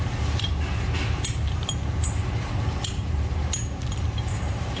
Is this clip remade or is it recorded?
remade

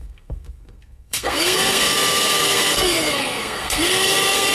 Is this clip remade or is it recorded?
remade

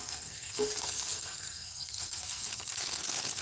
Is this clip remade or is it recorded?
remade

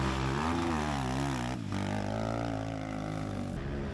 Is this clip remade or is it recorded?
recorded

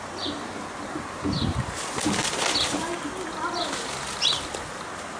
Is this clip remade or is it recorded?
recorded